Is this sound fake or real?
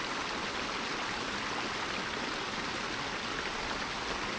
real